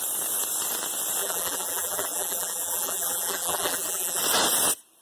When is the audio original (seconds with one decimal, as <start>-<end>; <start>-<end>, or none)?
0.0-1.2; 4.2-5.0